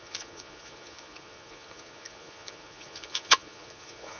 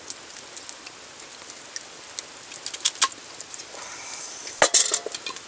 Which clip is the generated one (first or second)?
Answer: first